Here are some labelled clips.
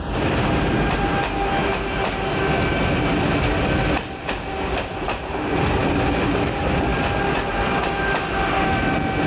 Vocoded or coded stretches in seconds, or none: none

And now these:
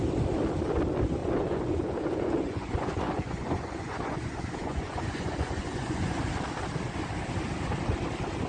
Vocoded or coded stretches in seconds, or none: 1.2-6.2 (vocoder, Vocos)

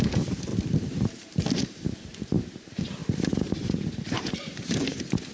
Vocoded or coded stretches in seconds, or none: 0.0-0.5 (vocoder, BigVGAN v2); 1.7-5.3

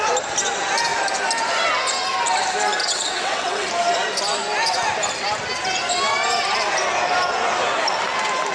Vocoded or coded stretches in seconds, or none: 2.8-3.7 (vocoder, WaveNeXt)

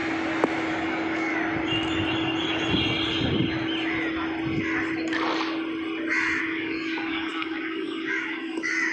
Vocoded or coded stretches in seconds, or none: 0.7-1.3 (codec, DAC); 6.4-8.9

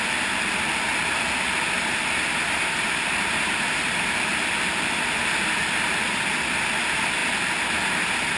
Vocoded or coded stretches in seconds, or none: none

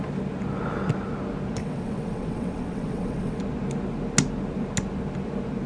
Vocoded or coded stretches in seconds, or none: 1.6-3.4 (vocoder, WaveNeXt)

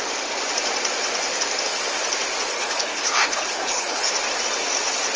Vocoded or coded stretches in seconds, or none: 2.5-4.1 (codec, HILCodec)